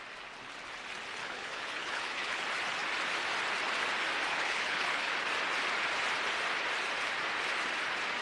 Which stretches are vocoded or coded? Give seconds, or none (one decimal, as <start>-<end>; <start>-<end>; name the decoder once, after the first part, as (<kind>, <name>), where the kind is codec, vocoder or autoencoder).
1.2-2.4 (codec, HILCodec); 4.3-5.1